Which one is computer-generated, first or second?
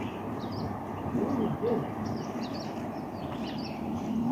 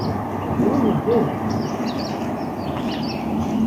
first